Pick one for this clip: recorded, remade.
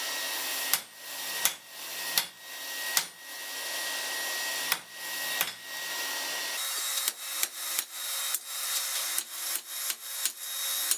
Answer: recorded